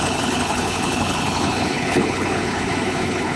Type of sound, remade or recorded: remade